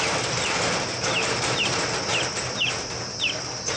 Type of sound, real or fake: real